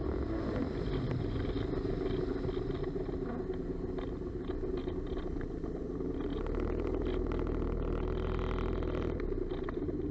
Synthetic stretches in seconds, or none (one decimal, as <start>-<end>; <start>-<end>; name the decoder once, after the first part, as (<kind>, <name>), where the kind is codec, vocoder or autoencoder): none